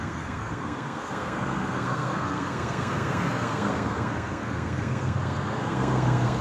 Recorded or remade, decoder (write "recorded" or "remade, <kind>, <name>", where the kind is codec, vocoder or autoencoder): remade, codec, SNAC